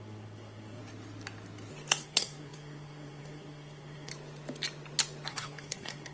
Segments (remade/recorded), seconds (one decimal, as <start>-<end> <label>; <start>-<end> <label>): 0.0-0.8 remade; 0.8-2.0 recorded; 2.0-4.1 remade; 4.1-5.3 recorded; 5.3-6.1 remade